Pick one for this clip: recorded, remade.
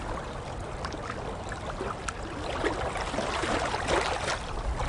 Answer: recorded